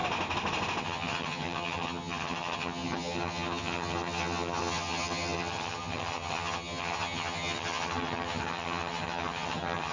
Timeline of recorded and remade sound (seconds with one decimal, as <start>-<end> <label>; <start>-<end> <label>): 0.0-0.8 recorded; 0.8-9.9 remade